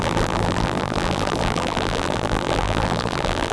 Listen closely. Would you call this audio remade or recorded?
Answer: remade